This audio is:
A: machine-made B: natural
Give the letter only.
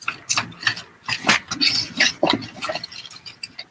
B